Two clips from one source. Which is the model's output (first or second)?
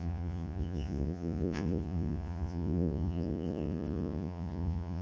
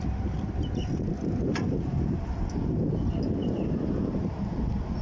first